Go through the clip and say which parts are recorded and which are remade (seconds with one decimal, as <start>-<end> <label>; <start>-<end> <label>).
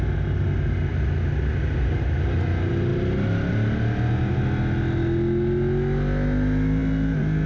0.0-7.5 recorded